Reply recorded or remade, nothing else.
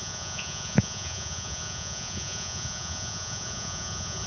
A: remade